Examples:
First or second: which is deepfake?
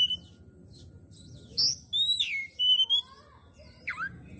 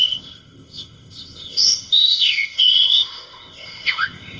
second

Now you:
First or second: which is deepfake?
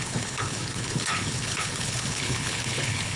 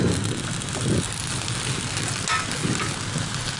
first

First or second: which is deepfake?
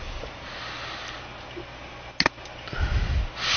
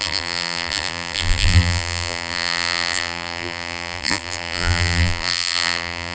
second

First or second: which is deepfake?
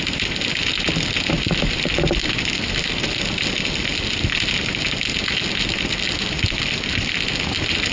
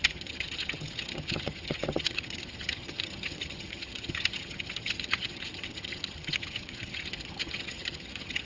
second